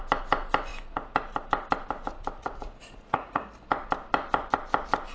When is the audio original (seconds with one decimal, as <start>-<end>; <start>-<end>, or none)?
0.0-2.4; 3.4-5.1